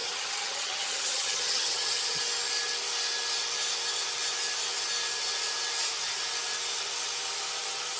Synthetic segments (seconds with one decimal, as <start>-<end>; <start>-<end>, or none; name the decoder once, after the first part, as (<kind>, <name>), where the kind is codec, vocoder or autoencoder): 0.0-2.2 (vocoder, HiFi-GAN)